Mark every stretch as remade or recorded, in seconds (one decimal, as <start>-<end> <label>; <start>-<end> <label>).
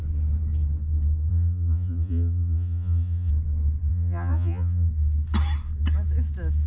0.0-1.3 recorded; 1.3-3.3 remade; 3.3-3.9 recorded; 3.9-4.9 remade; 4.9-6.7 recorded